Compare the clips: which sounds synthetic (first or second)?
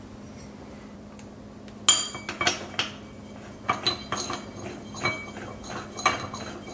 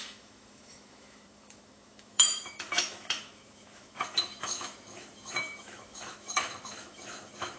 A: second